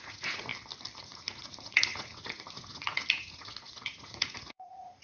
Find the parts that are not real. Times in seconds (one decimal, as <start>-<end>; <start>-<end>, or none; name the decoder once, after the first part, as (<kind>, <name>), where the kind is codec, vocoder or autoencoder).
0.0-0.5 (vocoder, Vocos); 1.0-5.0